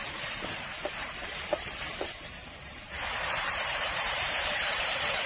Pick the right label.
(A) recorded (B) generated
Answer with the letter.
B